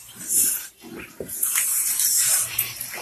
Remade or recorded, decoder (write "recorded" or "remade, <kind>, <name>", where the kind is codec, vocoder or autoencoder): recorded